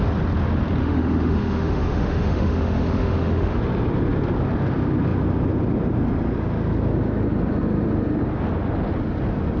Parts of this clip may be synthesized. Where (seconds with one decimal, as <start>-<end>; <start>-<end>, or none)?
0.8-3.6